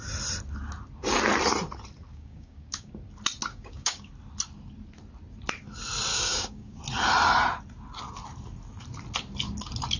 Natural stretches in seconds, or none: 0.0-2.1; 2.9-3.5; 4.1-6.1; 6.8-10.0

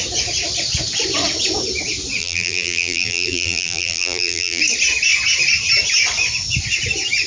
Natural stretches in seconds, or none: 0.0-2.2; 4.6-7.3

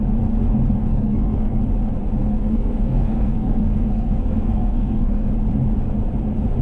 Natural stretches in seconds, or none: 0.0-0.9; 1.6-2.2; 5.3-6.6

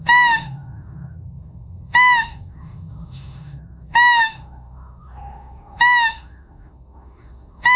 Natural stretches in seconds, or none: none

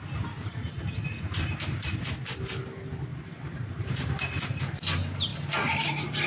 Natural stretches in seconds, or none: 0.0-3.1; 4.6-6.3

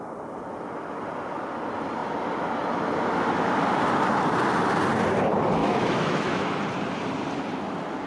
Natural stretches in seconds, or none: 0.0-5.6; 6.6-8.1

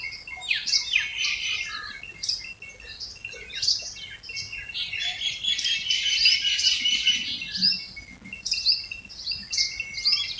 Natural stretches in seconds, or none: 0.0-10.4